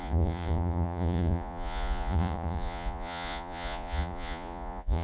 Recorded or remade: remade